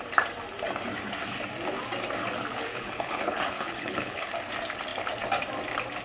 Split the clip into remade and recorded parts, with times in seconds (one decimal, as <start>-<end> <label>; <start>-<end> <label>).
0.0-2.7 recorded; 2.7-4.3 remade; 4.3-6.0 recorded